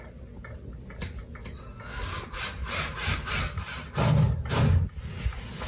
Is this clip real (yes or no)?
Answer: yes